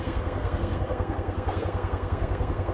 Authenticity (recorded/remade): remade